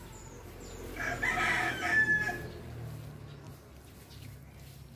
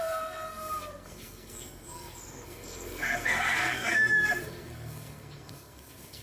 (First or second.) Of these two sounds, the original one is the first